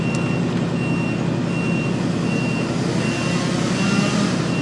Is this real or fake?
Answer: real